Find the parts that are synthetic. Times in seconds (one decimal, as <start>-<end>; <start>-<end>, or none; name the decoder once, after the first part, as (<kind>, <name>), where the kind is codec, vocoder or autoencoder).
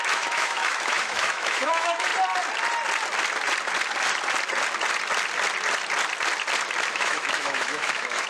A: 0.0-2.1 (autoencoder, DAC-VAE); 6.9-8.3